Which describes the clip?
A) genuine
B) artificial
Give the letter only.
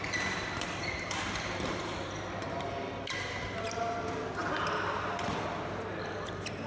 A